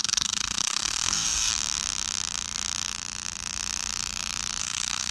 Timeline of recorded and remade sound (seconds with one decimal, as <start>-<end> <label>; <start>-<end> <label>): 0.0-1.5 remade; 1.5-4.6 recorded; 4.6-5.1 remade